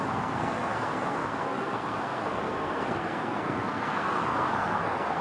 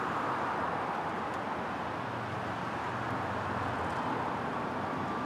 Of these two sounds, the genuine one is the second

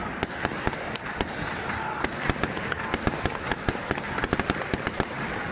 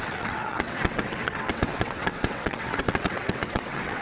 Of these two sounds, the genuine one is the first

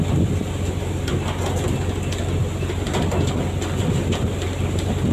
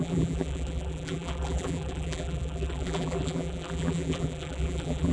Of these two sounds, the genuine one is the first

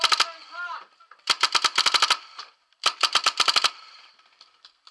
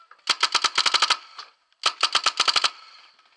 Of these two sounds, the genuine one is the second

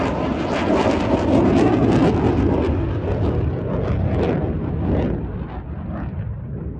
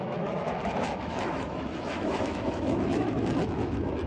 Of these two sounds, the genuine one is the first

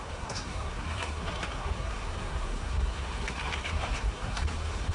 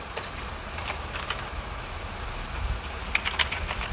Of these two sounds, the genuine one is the second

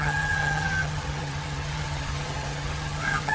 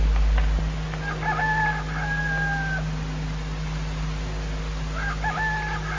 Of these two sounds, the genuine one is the second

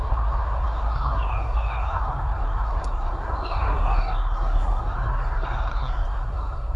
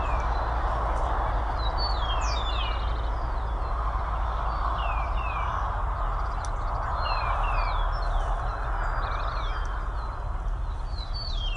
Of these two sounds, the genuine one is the second